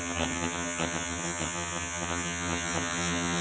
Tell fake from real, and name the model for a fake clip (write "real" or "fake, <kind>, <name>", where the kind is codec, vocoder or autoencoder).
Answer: fake, vocoder, HiFi-GAN